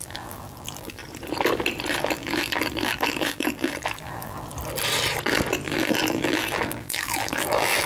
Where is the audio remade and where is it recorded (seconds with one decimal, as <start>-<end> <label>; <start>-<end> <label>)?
0.0-1.0 remade; 1.0-2.0 recorded; 2.0-4.5 remade; 4.5-5.5 recorded; 5.5-7.9 remade